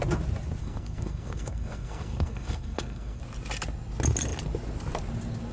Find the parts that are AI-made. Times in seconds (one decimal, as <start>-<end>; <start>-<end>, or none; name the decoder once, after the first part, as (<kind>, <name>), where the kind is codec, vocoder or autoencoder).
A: 0.6-3.2 (codec, SNAC)